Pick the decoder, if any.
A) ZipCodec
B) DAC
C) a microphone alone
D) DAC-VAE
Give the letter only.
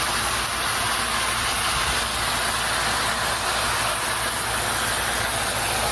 C